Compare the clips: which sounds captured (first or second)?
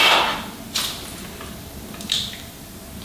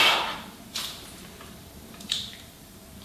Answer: first